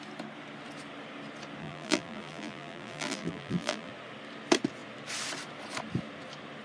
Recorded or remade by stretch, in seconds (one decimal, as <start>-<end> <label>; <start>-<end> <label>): 0.0-1.6 recorded; 1.6-3.9 remade; 3.9-6.6 recorded